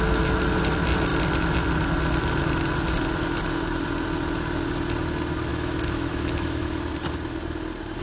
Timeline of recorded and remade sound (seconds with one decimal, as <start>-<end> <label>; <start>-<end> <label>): 0.0-5.5 recorded; 5.5-6.9 remade; 6.9-8.0 recorded